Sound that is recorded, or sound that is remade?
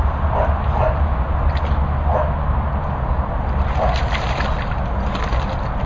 recorded